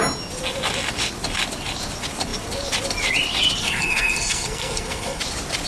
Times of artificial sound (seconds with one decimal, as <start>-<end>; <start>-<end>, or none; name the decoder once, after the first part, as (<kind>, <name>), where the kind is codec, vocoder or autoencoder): 3.6-5.2 (codec, SNAC)